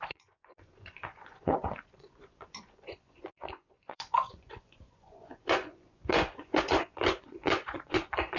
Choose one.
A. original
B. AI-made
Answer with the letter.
B